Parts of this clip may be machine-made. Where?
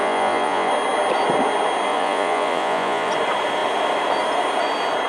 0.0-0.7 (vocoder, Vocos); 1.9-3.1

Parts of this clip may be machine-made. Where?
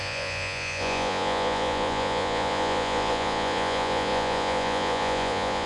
0.0-5.7 (vocoder, Vocos)